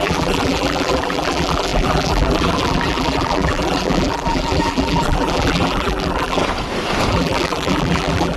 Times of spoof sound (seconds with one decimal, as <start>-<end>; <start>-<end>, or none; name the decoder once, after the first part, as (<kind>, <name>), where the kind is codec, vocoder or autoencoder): 0.0-6.4 (vocoder, BigVGAN v2); 7.1-8.4